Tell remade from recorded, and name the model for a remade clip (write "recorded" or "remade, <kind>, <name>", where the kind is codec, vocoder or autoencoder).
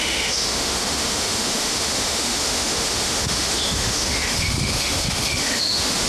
remade, autoencoder, DAC-VAE